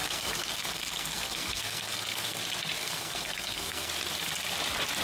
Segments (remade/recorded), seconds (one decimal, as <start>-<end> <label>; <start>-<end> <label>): 0.0-2.4 remade; 2.4-2.8 recorded; 2.8-3.9 remade; 3.9-5.0 recorded